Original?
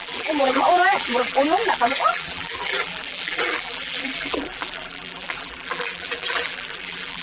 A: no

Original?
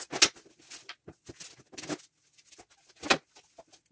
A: yes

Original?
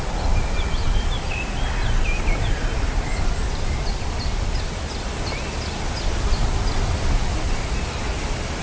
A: yes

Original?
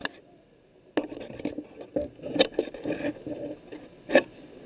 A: yes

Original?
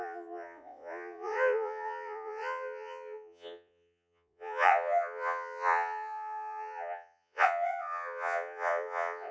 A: no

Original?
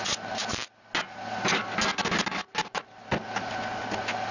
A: yes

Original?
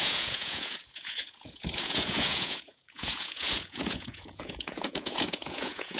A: no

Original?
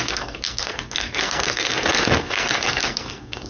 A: no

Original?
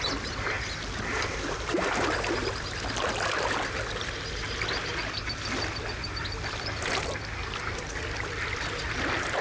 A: yes